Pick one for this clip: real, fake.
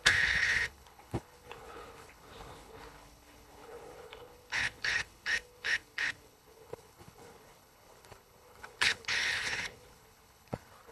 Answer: fake